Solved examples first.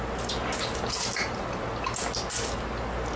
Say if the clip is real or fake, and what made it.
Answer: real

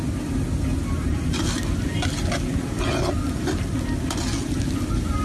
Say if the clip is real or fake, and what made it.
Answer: real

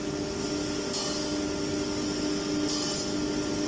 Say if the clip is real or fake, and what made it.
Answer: real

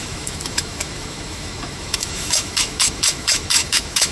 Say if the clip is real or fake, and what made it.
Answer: fake, autoencoder, DAC-VAE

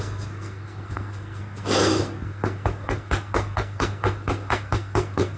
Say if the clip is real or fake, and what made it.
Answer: fake, codec, SNAC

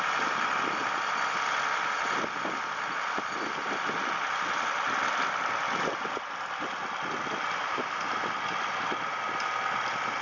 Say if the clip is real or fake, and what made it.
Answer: real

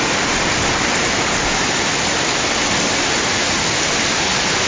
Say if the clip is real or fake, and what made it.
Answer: real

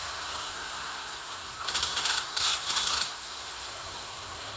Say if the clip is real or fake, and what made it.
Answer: fake, codec, SNAC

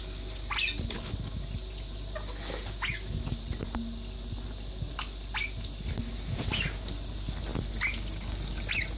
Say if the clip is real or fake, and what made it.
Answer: real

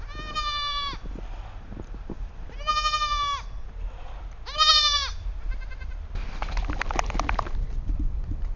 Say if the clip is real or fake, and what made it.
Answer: real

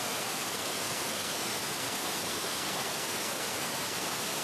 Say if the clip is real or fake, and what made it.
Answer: fake, codec, SNAC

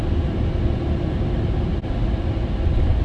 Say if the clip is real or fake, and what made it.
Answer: real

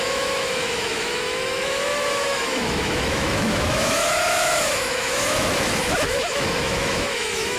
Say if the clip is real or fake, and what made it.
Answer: fake, autoencoder, DAC-VAE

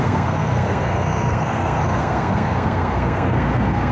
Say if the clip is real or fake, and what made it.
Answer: fake, codec, SNAC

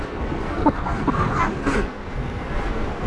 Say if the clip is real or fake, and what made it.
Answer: fake, codec, SNAC